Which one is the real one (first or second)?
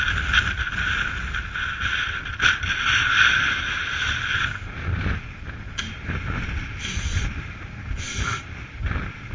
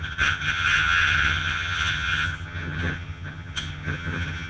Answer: first